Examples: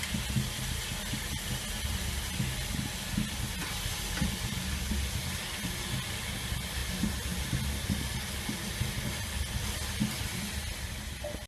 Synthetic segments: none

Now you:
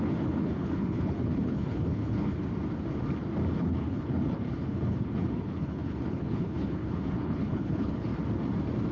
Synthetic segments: 0.0-2.4 (codec, HILCodec); 3.6-8.1

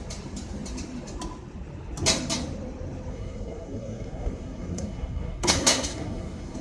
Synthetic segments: 3.1-6.6 (codec, SNAC)

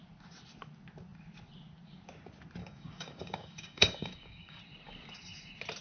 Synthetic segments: 2.6-4.6 (codec, DAC)

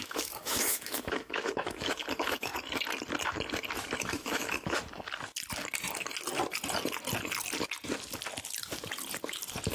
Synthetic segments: 0.0-2.5 (autoencoder, DAC-VAE); 4.0-4.8

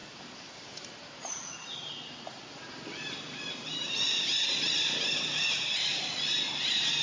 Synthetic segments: 0.0-7.0 (vocoder, BigVGAN v2)